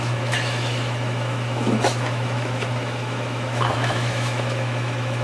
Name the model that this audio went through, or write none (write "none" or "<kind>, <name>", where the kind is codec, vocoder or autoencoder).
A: autoencoder, DAC-VAE